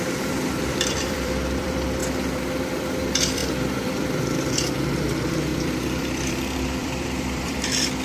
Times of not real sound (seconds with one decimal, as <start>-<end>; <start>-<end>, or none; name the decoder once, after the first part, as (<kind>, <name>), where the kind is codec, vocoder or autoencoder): 0.0-2.0 (vocoder, BigVGAN v2); 2.6-8.0

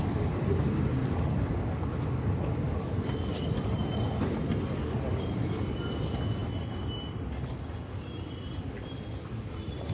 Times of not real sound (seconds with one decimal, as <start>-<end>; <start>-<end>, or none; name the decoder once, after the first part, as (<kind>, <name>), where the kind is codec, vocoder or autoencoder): 1.0-1.5 (vocoder, BigVGAN v2)

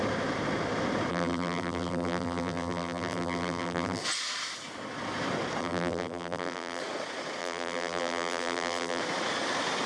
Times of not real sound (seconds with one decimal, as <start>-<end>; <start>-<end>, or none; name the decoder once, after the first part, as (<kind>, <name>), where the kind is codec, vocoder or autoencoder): 1.1-4.0 (vocoder, BigVGAN v2); 5.6-6.8; 7.4-9.0

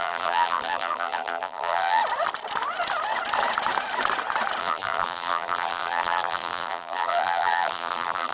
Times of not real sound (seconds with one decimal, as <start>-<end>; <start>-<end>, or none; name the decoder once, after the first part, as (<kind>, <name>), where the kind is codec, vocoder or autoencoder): 0.0-2.0 (vocoder, BigVGAN v2); 4.6-8.3